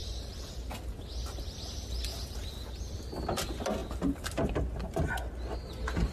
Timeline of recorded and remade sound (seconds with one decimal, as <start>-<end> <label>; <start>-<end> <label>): 0.0-0.5 remade; 0.5-6.1 recorded